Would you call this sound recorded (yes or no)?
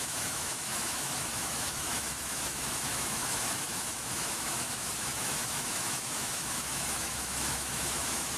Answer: no